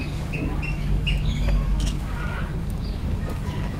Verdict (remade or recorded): remade